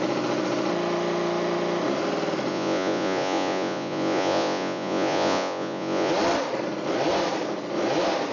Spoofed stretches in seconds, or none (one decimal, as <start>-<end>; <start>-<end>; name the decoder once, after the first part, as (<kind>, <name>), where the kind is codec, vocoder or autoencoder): 2.5-6.1 (vocoder, Vocos)